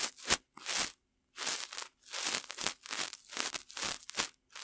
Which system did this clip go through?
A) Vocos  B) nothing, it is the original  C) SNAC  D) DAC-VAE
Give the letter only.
B